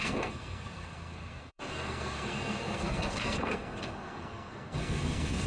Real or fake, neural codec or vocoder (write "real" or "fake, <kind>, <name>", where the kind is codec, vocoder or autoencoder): fake, codec, SNAC